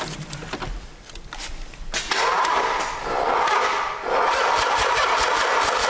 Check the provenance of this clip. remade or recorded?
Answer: recorded